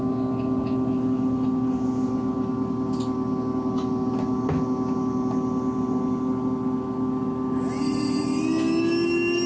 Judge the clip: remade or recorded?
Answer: recorded